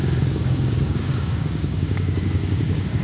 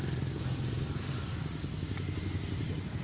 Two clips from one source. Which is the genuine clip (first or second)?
second